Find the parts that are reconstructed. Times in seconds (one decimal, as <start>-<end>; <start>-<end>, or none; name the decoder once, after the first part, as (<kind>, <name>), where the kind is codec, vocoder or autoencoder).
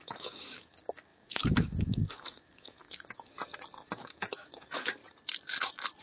0.0-3.4 (autoencoder, DAC-VAE); 4.0-5.0